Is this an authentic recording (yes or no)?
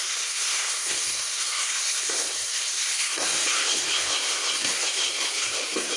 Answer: no